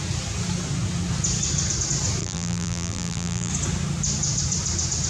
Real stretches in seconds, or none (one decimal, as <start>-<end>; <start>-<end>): 0.0-2.2; 3.5-5.1